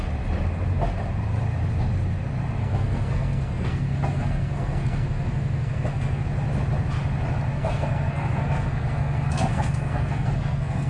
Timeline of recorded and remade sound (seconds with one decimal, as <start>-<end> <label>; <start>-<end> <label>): 0.0-2.6 recorded; 2.6-6.2 remade; 6.2-7.5 recorded; 7.5-10.9 remade